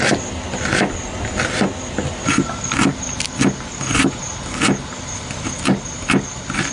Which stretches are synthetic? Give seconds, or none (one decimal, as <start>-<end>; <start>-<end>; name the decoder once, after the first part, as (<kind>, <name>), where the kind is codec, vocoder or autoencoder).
none